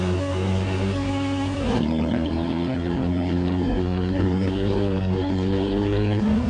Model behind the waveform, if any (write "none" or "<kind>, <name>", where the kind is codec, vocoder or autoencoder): codec, SNAC